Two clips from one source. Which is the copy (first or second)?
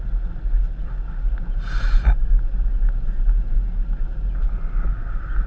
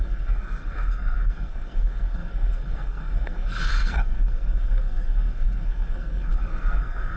second